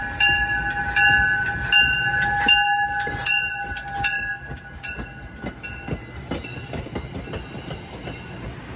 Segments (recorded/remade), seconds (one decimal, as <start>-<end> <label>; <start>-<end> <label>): 0.0-8.8 recorded